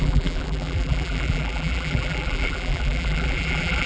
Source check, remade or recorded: remade